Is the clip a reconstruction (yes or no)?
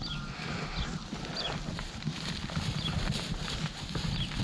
no